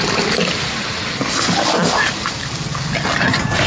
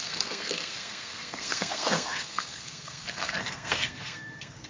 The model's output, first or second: second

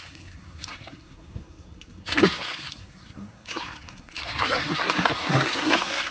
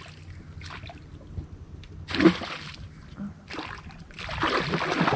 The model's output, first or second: first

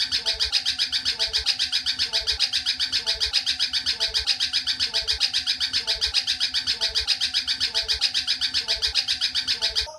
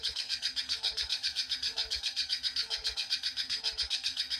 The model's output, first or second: second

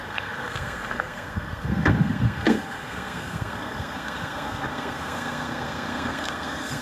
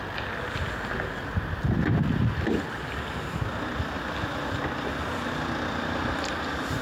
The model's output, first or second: first